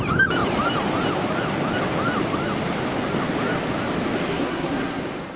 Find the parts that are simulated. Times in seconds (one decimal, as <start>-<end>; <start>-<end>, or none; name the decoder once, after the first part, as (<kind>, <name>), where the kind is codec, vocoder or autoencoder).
4.3-5.0 (codec, SNAC)